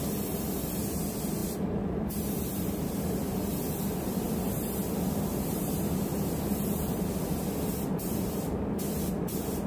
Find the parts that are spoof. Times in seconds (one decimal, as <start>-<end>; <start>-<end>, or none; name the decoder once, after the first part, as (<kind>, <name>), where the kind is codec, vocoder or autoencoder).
1.4-5.8 (vocoder, BigVGAN v2)